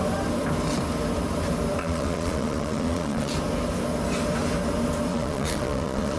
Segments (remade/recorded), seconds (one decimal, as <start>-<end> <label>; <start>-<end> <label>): 0.0-1.8 recorded; 1.8-3.3 remade; 3.3-5.1 recorded; 5.1-6.2 remade